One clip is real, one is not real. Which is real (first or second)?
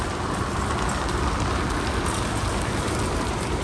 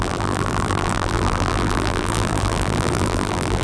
first